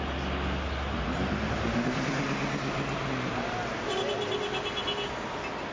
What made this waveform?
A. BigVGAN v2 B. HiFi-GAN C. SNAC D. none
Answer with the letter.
D